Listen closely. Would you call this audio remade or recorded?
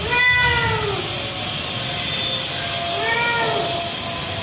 recorded